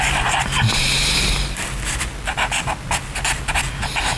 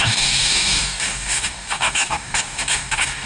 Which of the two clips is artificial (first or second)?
second